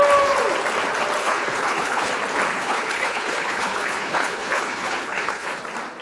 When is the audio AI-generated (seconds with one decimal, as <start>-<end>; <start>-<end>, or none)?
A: 1.2-2.1; 2.5-5.6